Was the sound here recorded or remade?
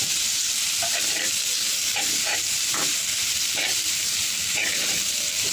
remade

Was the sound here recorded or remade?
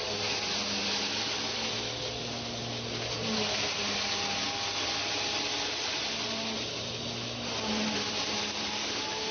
recorded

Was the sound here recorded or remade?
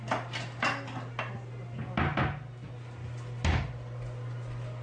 recorded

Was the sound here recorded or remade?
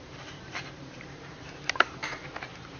remade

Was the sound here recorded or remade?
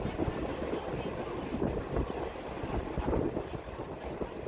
recorded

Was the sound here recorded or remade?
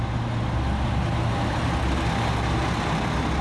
recorded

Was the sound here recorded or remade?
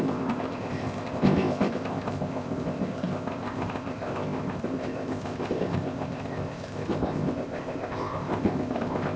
remade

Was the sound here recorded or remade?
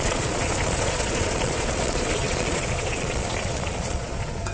remade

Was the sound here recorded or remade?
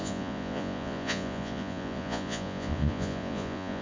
remade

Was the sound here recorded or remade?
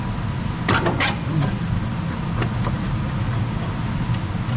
recorded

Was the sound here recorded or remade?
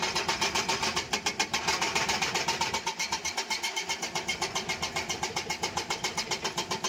recorded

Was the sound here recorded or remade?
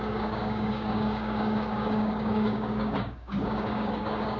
remade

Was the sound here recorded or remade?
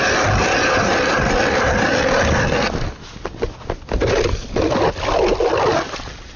recorded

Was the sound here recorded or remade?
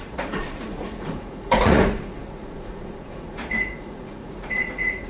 remade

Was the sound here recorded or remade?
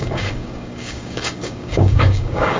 remade